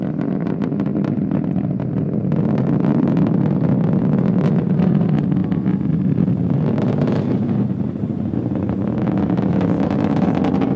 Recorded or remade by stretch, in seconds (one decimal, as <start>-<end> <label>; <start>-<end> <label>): 0.0-5.4 recorded; 5.4-9.4 remade; 9.4-10.8 recorded